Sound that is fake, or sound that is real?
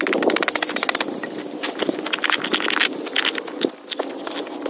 real